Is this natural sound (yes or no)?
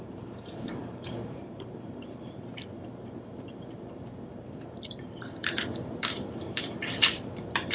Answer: no